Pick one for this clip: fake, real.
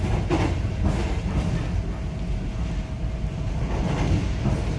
real